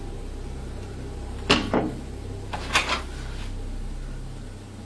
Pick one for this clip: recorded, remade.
recorded